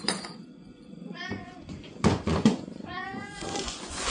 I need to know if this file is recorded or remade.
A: remade